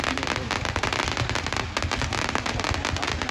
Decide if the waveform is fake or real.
real